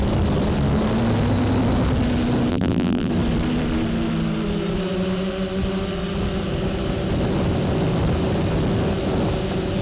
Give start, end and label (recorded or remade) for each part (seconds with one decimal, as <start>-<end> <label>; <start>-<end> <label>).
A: 0.0-2.5 recorded; 2.5-3.1 remade; 3.1-9.8 recorded